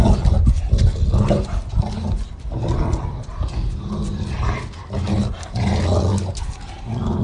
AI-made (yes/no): no